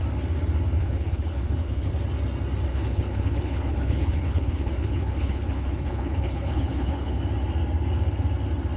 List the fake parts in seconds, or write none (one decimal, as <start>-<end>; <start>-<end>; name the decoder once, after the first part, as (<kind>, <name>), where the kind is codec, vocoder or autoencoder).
0.8-1.9 (codec, HILCodec); 2.7-7.2